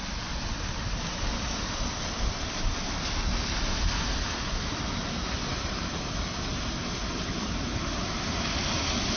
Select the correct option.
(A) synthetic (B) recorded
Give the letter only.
B